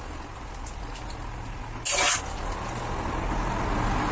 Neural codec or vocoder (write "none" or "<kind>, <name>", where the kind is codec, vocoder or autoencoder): none